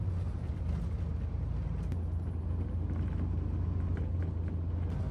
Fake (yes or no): no